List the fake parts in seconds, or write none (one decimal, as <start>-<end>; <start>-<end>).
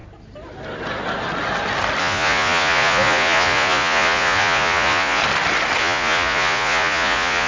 2.0-5.2; 5.8-7.5